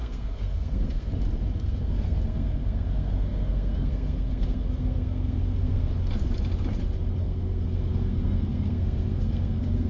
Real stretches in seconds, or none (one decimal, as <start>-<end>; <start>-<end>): 1.1-1.6; 5.9-7.2